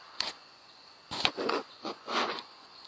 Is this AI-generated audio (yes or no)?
yes